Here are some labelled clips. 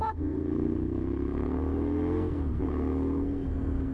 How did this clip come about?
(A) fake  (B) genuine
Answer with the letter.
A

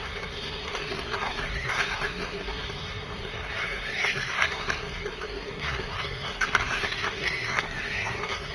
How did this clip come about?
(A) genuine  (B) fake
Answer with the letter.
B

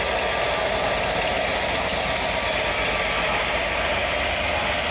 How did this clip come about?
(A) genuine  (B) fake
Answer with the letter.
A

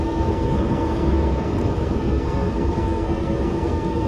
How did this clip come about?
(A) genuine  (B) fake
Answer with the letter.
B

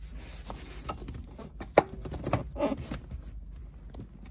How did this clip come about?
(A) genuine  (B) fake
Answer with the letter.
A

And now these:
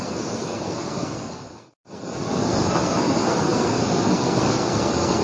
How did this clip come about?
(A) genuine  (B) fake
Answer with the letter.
B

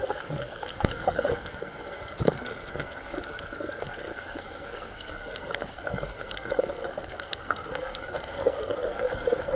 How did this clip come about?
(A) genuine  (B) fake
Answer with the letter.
B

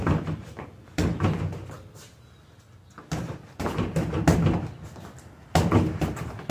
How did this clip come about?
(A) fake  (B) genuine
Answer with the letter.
B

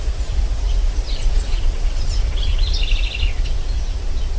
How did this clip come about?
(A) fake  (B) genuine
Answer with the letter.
B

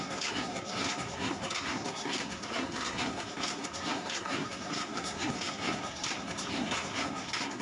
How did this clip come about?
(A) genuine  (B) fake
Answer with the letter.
B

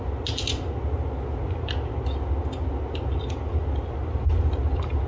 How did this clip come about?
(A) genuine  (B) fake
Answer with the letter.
A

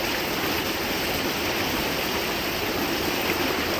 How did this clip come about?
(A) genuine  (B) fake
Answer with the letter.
A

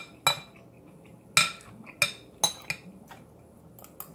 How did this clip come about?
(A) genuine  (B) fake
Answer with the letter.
A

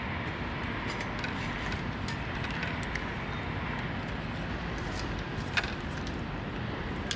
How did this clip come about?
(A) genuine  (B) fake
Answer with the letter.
A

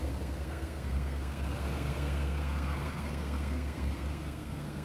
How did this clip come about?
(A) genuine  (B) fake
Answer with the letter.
B